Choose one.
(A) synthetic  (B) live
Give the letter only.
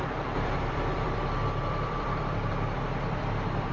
A